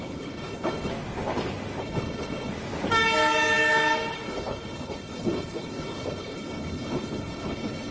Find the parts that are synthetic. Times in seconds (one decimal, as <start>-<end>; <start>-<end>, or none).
0.0-0.9; 1.8-2.5; 4.1-7.9